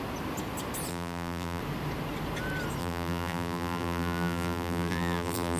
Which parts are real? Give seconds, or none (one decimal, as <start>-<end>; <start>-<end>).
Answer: 0.0-0.9; 1.6-2.8